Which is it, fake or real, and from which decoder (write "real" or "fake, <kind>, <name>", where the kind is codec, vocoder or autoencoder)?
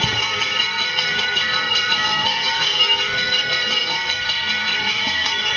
fake, codec, SNAC